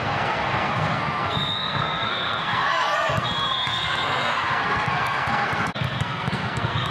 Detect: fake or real fake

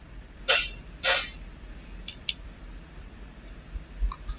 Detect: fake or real fake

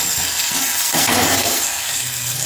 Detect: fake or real fake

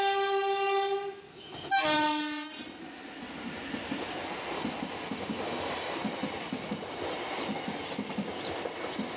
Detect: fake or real real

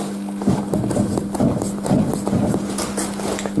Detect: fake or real real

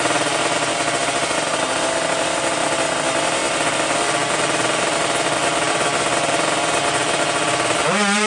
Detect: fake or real fake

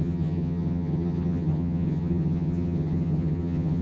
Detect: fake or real fake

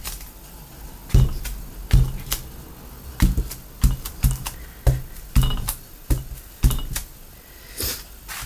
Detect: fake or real real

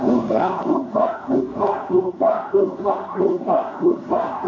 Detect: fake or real fake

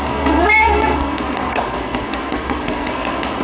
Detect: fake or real fake